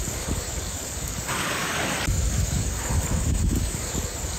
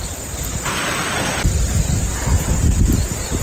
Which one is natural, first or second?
second